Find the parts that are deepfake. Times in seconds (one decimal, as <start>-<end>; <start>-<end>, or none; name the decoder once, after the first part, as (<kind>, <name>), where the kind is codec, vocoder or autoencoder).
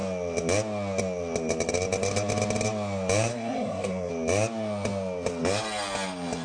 3.3-4.1 (codec, SNAC)